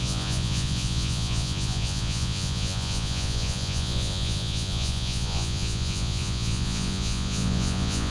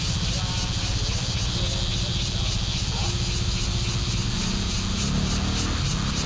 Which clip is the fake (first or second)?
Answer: first